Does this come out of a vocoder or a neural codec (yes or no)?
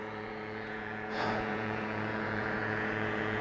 yes